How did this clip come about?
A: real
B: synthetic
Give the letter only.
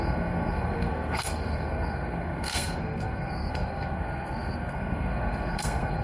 B